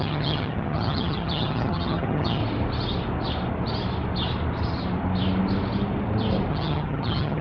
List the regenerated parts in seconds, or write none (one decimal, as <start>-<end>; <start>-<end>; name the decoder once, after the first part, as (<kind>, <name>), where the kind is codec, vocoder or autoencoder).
0.0-2.4 (vocoder, HiFi-GAN); 6.5-7.4